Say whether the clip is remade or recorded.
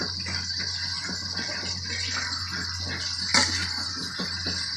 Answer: recorded